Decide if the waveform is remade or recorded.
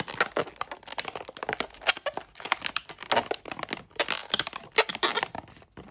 recorded